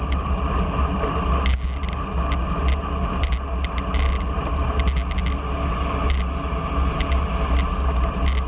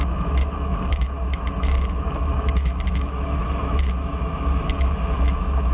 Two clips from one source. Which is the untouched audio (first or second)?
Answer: first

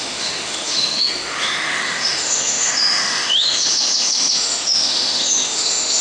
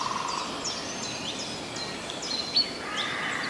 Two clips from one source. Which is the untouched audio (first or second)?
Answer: second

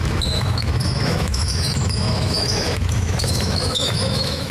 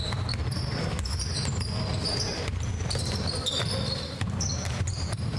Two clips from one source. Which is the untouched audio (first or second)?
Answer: second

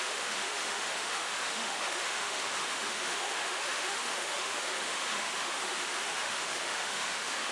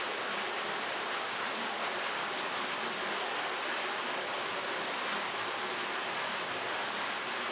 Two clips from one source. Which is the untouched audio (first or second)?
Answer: second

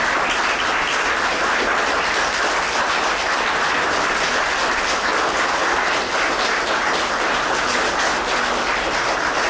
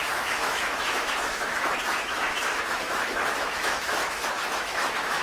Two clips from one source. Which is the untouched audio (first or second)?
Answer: first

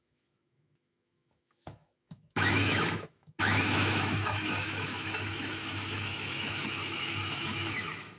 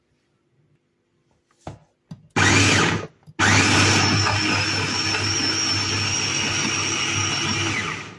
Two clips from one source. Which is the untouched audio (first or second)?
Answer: second